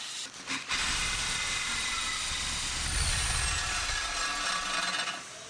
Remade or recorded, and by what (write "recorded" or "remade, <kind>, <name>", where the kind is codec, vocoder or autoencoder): recorded